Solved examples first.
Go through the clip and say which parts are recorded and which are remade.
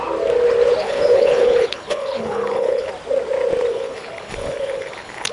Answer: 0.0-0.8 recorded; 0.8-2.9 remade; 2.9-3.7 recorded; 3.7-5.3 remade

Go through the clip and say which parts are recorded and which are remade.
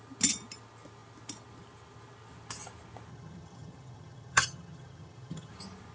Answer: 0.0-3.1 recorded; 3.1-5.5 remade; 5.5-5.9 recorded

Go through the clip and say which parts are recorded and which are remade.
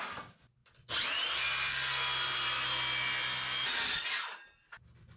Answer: 0.0-5.2 recorded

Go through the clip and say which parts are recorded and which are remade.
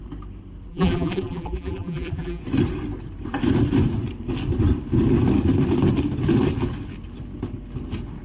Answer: 0.0-0.7 recorded; 0.7-2.4 remade; 2.4-8.2 recorded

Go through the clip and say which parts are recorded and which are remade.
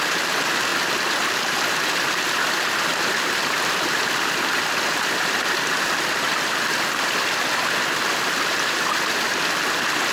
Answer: 0.0-10.1 recorded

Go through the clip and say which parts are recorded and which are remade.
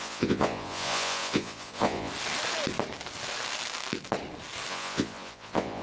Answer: 0.0-2.1 remade; 2.1-4.7 recorded; 4.7-5.8 remade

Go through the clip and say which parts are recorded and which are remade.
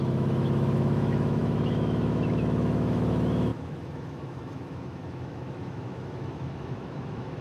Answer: 0.0-7.4 remade